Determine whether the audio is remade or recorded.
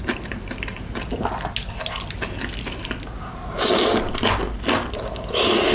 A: recorded